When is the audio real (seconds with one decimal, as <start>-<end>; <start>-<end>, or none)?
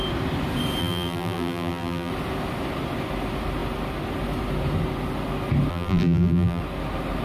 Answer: 0.0-0.8; 2.1-5.7; 6.6-7.2